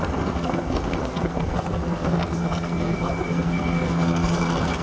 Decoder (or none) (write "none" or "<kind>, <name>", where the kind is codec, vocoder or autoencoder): codec, SNAC